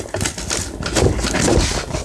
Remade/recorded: recorded